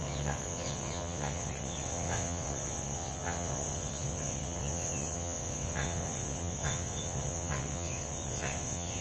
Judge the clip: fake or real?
fake